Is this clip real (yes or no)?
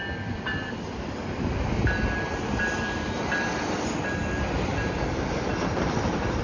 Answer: yes